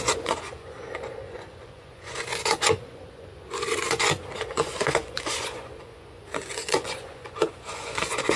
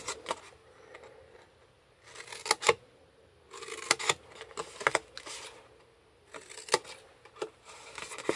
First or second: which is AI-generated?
first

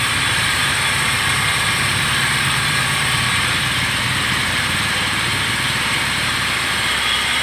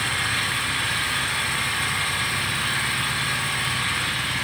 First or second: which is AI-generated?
first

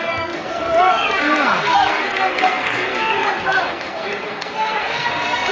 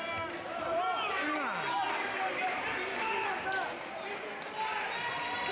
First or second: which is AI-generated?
first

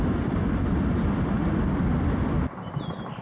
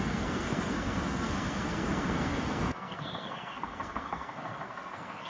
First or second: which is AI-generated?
second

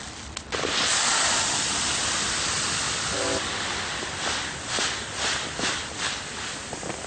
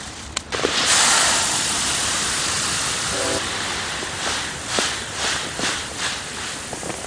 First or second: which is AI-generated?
second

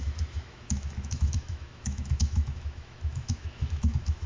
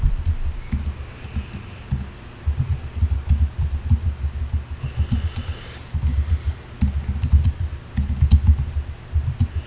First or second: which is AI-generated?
first